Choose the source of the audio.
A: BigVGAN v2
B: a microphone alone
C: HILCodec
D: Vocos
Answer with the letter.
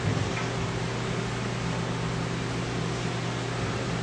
B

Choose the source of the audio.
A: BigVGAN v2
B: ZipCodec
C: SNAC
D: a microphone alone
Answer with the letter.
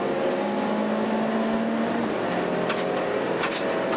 D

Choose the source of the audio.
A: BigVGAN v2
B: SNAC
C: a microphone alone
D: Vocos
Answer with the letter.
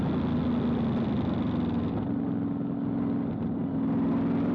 C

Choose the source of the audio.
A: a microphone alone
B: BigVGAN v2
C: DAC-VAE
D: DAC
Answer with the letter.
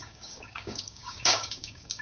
D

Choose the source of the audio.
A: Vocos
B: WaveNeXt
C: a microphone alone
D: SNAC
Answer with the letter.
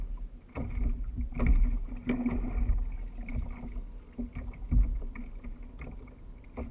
C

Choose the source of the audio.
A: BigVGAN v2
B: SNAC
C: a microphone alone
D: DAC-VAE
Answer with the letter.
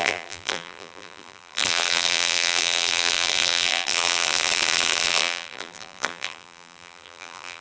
A